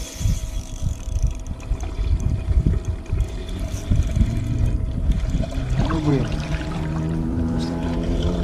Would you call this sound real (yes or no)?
no